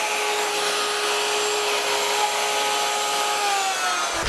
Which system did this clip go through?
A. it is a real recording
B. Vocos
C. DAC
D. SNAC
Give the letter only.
A